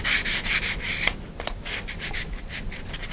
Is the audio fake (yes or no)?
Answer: no